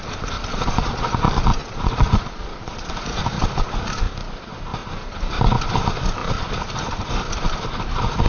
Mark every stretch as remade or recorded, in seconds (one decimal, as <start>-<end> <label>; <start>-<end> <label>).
0.0-0.5 recorded; 0.5-1.2 remade; 1.2-1.6 recorded; 1.6-3.2 remade; 3.2-8.3 recorded